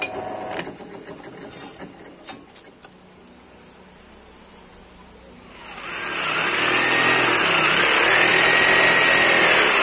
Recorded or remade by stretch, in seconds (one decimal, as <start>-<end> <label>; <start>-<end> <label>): 0.0-9.8 recorded